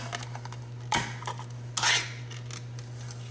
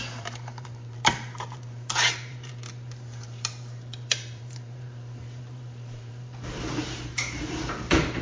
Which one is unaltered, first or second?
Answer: first